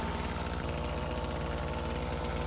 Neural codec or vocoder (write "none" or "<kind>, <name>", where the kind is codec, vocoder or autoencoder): none